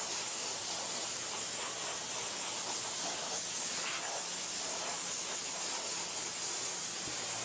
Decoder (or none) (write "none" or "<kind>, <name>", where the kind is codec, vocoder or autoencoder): none